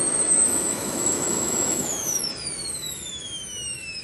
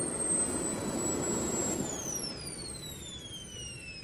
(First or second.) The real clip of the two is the second